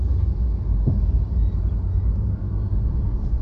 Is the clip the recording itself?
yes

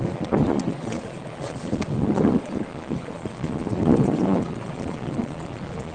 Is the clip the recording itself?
no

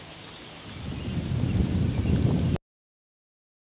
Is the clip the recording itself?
yes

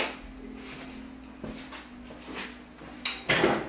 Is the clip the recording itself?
yes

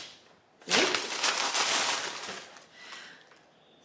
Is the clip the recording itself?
yes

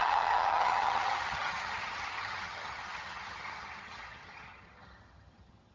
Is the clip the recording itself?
no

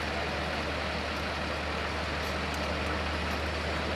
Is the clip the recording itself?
yes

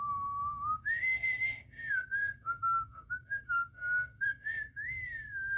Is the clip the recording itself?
no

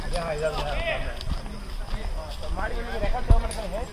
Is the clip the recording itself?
yes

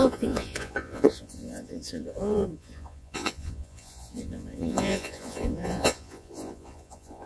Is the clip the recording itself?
no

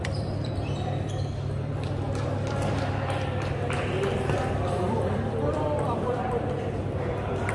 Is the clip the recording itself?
no